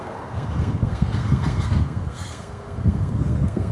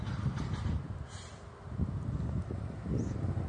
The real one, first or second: second